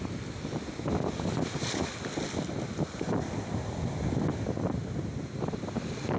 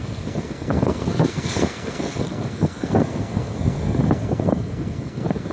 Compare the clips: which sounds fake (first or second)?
second